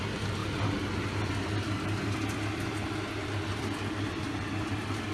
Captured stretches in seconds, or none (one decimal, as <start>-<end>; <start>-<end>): 0.0-5.1